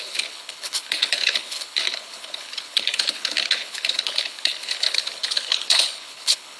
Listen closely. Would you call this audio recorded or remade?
remade